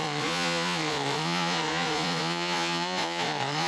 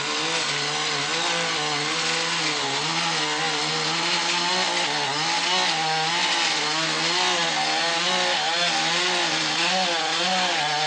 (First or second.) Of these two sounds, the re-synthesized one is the first